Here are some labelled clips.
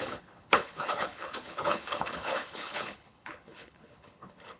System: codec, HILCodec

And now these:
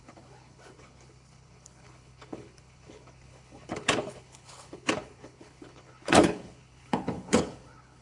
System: codec, HILCodec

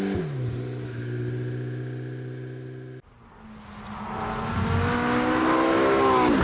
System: none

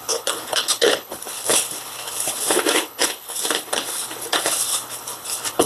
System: codec, HILCodec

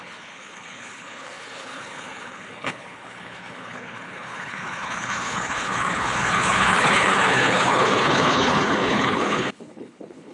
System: codec, HILCodec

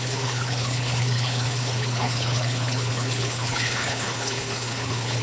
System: codec, HILCodec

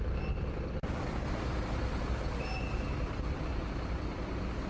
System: none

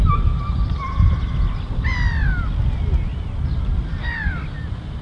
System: none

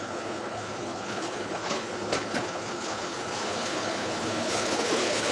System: codec, HILCodec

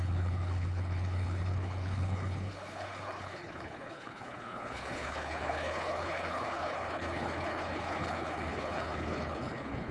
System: codec, HILCodec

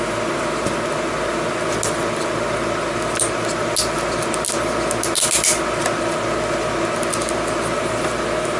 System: none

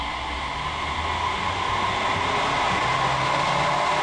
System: none